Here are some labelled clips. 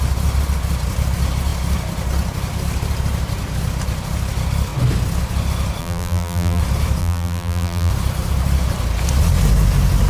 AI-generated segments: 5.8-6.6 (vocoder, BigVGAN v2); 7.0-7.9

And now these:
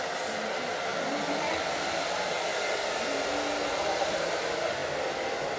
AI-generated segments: 0.0-0.9 (vocoder, BigVGAN v2); 4.0-4.8

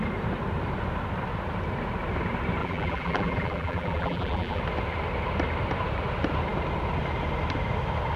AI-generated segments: 2.6-4.6 (vocoder, BigVGAN v2)

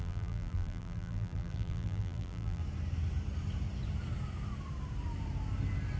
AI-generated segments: 0.0-2.6 (vocoder, BigVGAN v2)